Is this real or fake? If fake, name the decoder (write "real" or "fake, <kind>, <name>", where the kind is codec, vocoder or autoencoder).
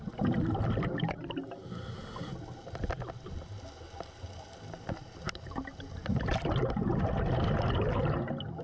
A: real